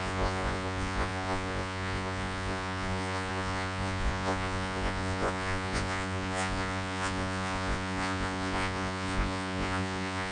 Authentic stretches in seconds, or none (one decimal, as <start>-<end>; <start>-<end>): none